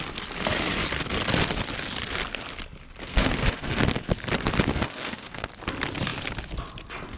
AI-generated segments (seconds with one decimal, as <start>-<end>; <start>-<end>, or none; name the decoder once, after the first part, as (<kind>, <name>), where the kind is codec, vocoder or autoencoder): 3.1-3.8 (codec, SNAC); 4.7-5.5